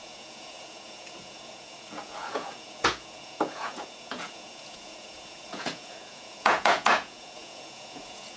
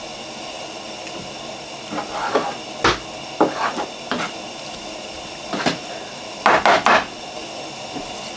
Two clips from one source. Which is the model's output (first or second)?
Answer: first